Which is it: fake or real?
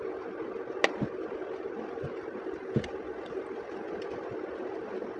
real